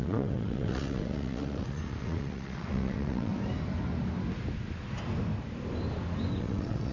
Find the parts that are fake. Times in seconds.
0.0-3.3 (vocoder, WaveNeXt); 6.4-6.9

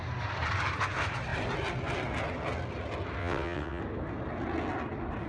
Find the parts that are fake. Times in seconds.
3.2-3.8 (vocoder, WaveNeXt)

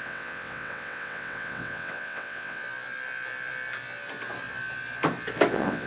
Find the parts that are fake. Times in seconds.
0.0-2.6 (vocoder, WaveNeXt); 5.5-5.9

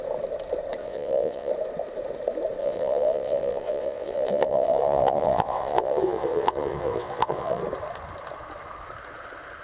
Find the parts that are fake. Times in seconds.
0.8-1.5 (vocoder, WaveNeXt); 2.6-7.6

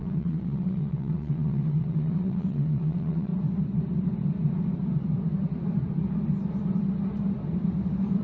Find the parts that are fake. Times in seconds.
0.0-3.3 (vocoder, WaveNeXt)

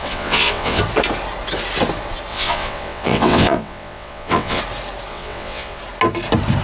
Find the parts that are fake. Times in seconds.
0.0-0.8 (vocoder, WaveNeXt); 2.3-4.6; 5.1-5.8

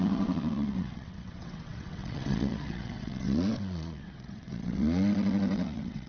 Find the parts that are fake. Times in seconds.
0.0-6.1 (vocoder, WaveNeXt)